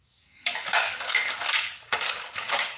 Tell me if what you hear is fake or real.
fake